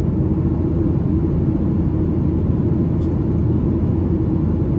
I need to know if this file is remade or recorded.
recorded